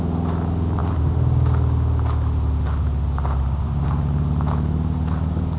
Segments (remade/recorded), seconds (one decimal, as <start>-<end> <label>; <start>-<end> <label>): 0.0-5.6 recorded